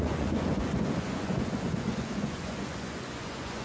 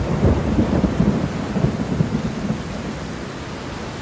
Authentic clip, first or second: second